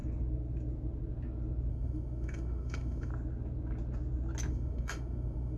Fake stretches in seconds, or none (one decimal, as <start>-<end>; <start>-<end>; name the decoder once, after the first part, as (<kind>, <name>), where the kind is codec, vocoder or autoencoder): 1.7-3.1 (autoencoder, DAC-VAE); 4.5-5.6